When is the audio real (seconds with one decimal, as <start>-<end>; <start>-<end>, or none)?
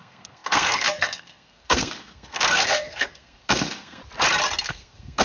4.0-4.6